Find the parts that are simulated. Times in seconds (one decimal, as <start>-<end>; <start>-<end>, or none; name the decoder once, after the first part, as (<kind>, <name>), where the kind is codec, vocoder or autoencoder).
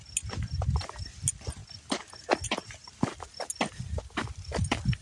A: none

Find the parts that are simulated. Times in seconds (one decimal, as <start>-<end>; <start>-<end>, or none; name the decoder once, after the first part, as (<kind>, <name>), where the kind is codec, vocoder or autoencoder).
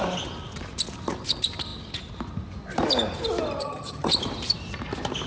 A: 3.6-4.1 (vocoder, HiFi-GAN)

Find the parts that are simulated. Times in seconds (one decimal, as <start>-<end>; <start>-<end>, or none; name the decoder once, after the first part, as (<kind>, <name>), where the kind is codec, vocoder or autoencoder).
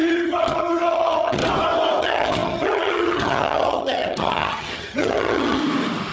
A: 0.0-1.4 (vocoder, HiFi-GAN); 2.0-5.6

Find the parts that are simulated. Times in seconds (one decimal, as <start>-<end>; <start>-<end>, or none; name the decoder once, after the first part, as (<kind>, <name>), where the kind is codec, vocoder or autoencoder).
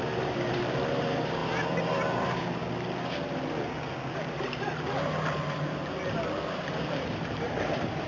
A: 0.0-2.6 (vocoder, BigVGAN v2); 6.7-8.1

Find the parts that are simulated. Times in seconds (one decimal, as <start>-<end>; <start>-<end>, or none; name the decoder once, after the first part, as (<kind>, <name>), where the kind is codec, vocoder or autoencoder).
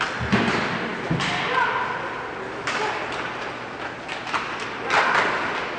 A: none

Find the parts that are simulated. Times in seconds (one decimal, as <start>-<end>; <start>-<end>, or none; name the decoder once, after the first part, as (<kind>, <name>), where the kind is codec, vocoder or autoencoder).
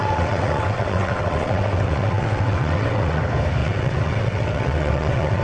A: 0.0-3.2 (vocoder, WaveNeXt); 3.6-5.4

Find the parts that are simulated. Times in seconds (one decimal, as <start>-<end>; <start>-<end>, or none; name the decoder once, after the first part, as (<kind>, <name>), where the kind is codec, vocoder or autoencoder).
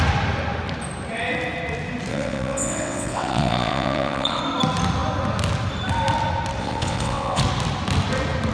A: 2.1-4.4 (vocoder, WaveNeXt); 6.6-7.4